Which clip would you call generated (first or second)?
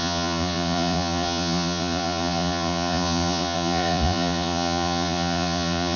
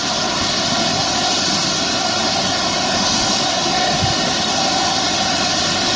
first